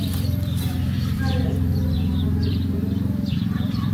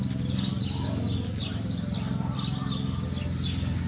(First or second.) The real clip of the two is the second